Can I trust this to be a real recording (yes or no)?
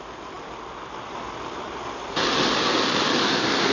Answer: yes